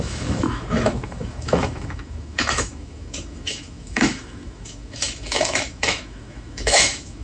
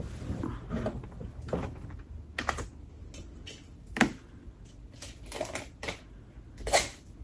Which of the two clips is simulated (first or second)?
first